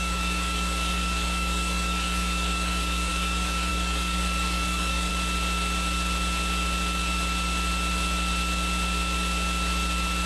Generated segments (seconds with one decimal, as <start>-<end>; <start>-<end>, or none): 0.0-5.1